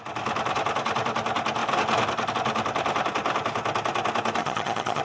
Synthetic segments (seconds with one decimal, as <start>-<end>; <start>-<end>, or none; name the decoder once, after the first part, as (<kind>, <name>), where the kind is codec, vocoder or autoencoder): 4.4-5.0 (vocoder, HiFi-GAN)